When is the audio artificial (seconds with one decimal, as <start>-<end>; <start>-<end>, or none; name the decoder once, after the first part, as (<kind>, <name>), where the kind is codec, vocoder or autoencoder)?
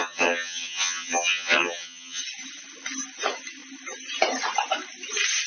0.0-2.2 (vocoder, HiFi-GAN)